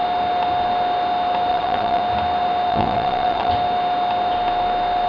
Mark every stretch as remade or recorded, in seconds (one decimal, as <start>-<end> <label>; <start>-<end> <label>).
0.0-1.5 recorded; 1.5-2.0 remade; 2.0-2.7 recorded; 2.7-3.5 remade; 3.5-5.1 recorded